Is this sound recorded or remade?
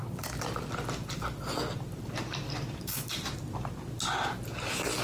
recorded